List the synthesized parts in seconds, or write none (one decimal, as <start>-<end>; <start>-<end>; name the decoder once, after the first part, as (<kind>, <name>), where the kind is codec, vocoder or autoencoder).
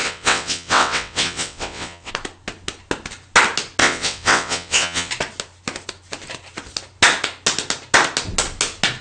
0.0-2.1 (vocoder, WaveNeXt); 3.8-5.1